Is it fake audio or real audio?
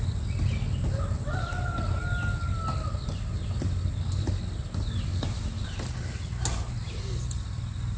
real